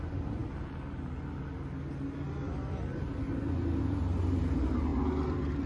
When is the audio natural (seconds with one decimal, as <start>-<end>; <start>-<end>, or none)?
0.0-5.7